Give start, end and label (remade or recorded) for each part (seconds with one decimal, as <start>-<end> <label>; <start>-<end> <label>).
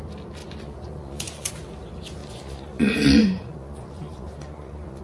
0.0-0.4 recorded; 0.4-1.5 remade; 1.5-2.2 recorded; 2.2-5.0 remade